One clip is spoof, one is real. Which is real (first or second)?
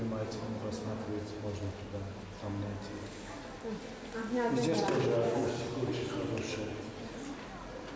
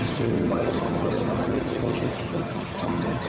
first